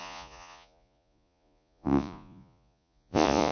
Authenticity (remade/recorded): remade